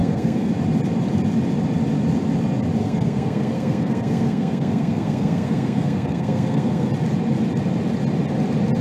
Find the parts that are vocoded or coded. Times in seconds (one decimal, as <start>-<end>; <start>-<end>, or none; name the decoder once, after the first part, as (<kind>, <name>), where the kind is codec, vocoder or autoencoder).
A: 0.0-0.5 (codec, SNAC); 2.8-6.9